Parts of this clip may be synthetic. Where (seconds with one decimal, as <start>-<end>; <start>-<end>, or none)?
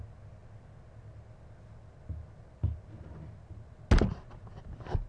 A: none